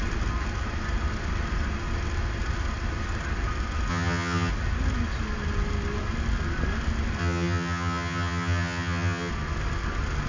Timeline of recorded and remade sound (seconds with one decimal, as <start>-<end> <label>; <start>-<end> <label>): 0.0-3.9 recorded; 3.9-4.5 remade; 4.5-7.2 recorded; 7.2-9.3 remade; 9.3-10.3 recorded